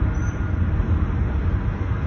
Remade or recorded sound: recorded